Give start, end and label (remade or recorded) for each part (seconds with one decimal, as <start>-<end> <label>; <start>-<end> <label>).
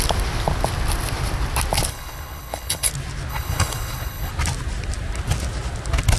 0.0-1.9 recorded; 1.9-2.9 remade; 2.9-3.3 recorded; 3.3-4.3 remade; 4.3-6.2 recorded